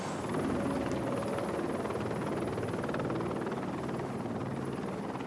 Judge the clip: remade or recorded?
recorded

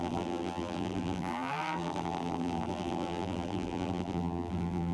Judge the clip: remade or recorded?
remade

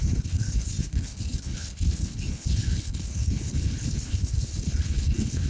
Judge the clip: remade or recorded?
remade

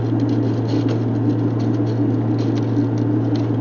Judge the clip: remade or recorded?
recorded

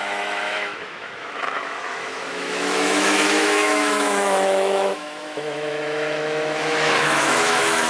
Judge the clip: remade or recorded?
remade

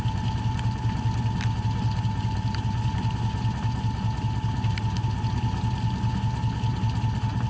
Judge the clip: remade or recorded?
recorded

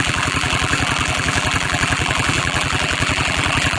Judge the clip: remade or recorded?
remade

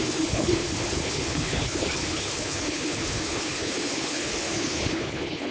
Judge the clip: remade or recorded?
remade